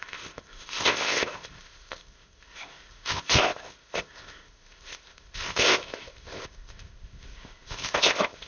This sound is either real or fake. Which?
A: fake